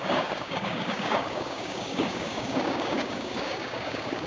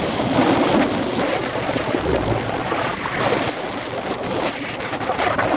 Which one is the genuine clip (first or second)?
second